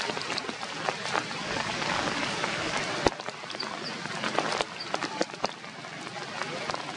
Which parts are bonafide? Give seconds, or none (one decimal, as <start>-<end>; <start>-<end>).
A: 0.0-1.4; 2.8-7.0